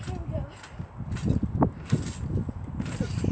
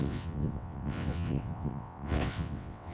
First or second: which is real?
first